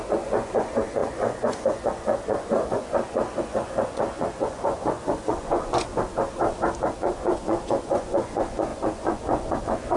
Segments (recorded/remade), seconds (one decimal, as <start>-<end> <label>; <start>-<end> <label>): 0.0-5.9 remade; 5.9-6.8 recorded; 6.8-10.0 remade